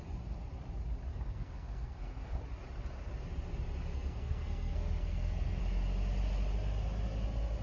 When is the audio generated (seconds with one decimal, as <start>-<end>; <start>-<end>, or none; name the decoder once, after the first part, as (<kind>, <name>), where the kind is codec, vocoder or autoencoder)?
1.1-2.4 (codec, SNAC); 3.9-5.6